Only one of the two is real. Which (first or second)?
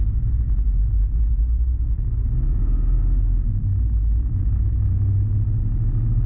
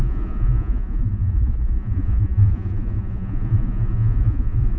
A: first